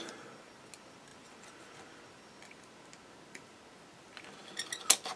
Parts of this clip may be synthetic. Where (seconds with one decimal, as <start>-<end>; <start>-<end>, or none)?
none